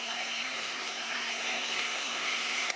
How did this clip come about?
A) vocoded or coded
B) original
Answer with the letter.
A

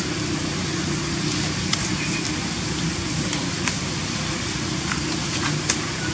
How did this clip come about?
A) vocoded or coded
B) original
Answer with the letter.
B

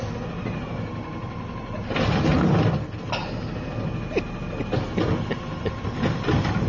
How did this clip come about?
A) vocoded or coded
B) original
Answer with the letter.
B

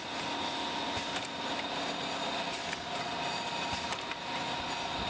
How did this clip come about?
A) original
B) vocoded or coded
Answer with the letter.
A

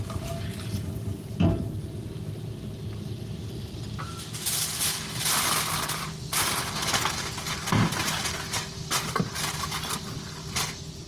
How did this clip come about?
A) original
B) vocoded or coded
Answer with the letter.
A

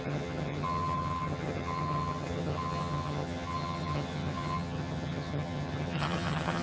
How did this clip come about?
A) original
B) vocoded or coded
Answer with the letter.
B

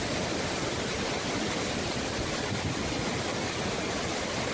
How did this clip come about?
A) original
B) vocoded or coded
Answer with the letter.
A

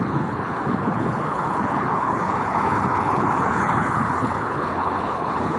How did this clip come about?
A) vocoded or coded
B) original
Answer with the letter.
A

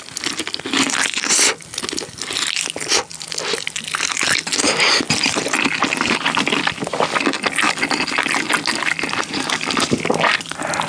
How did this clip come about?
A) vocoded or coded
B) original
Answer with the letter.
B